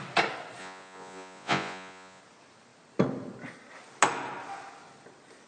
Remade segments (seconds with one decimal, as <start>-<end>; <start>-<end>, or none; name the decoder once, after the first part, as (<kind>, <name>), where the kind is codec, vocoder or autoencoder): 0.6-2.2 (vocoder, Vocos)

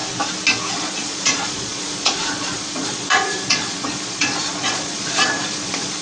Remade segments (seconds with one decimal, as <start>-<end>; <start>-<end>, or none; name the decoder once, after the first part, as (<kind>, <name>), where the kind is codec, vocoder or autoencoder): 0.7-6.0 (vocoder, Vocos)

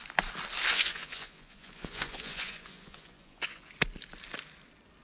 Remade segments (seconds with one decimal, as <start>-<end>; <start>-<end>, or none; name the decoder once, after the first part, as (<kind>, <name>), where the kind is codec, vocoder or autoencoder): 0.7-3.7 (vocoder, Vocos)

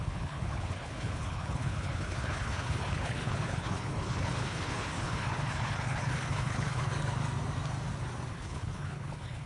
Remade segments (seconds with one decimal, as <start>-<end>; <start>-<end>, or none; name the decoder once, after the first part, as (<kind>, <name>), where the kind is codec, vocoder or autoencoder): 0.0-6.9 (codec, HILCodec); 8.3-9.5